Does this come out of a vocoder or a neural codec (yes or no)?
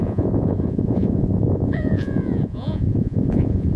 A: yes